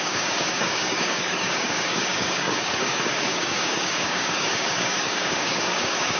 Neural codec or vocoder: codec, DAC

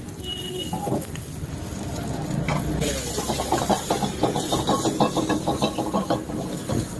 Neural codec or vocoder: none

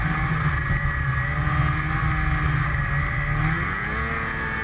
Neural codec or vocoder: none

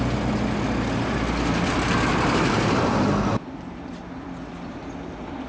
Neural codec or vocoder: none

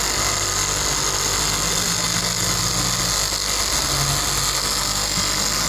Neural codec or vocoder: none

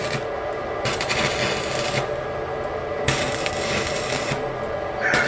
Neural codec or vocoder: none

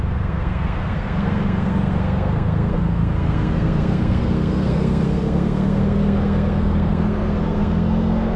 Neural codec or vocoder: codec, SNAC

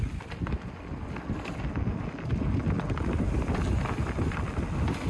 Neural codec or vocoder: none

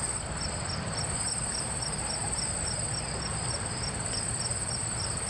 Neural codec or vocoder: none